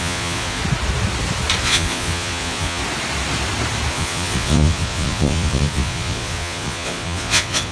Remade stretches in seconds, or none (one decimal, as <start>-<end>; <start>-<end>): 0.0-0.6; 1.6-2.8; 3.9-7.7